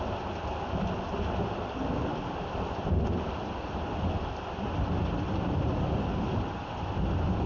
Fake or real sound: real